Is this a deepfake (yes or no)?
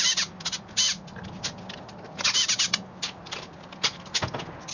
no